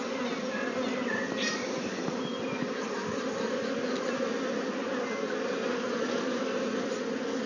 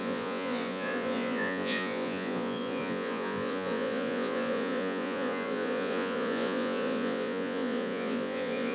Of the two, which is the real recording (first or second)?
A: first